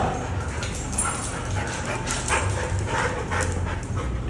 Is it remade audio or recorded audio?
recorded